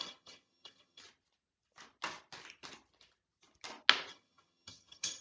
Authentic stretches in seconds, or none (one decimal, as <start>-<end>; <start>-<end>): 1.0-4.1